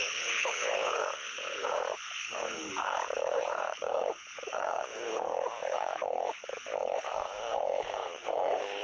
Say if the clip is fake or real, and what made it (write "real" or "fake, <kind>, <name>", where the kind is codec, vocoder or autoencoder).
fake, codec, HILCodec